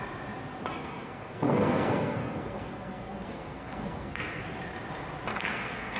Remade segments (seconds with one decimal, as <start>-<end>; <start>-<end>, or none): 0.8-4.4; 5.3-6.0